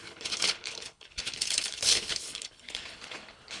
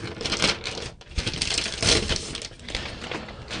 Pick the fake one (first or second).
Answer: first